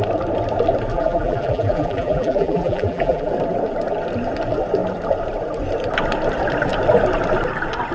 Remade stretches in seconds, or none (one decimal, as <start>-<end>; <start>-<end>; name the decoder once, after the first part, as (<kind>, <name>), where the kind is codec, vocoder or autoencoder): 0.9-3.3 (vocoder, BigVGAN v2)